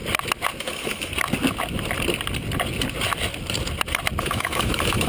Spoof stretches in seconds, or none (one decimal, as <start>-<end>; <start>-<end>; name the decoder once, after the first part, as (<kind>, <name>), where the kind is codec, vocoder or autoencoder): 0.6-1.1 (autoencoder, DAC-VAE); 4.2-5.1